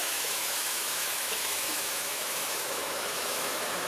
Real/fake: fake